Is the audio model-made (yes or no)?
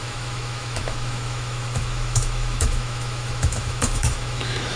yes